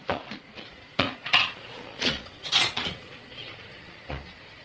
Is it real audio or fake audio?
fake